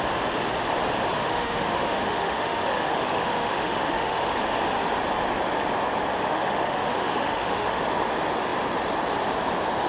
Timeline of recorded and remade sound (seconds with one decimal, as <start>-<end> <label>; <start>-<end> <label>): 0.0-1.2 recorded; 1.2-4.3 remade; 4.3-6.1 recorded; 6.1-7.8 remade; 7.8-9.9 recorded